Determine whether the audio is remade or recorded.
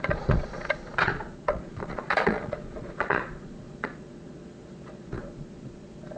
remade